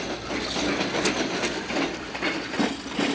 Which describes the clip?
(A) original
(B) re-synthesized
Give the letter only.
A